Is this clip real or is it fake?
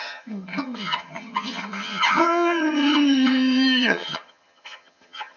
fake